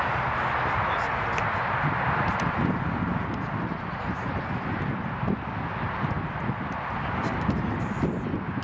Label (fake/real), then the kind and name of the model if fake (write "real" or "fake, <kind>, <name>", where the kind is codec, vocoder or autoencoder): real